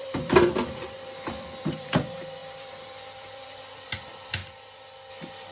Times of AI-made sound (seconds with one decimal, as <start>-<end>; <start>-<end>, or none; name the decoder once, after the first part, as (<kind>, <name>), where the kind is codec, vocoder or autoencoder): 0.0-4.4 (vocoder, BigVGAN v2); 5.1-5.5